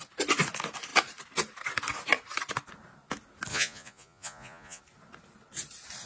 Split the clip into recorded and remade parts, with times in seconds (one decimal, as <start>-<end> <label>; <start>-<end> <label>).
0.0-3.5 recorded; 3.5-4.8 remade; 4.8-6.1 recorded